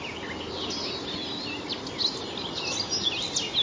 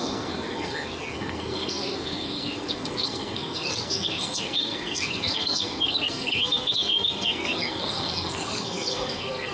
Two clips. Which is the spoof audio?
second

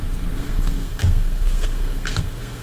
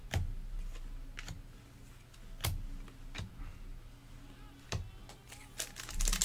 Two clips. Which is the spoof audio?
first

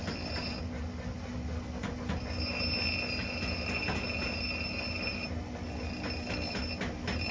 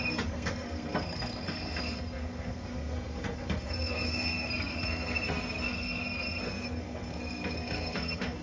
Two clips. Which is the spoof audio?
second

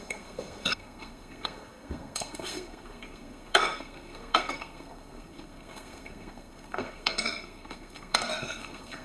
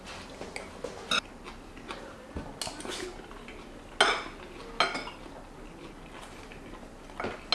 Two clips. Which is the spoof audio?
first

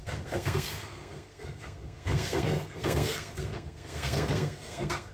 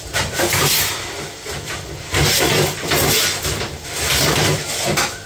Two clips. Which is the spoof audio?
first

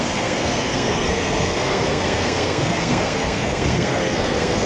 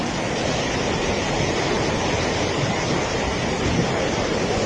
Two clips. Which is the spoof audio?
first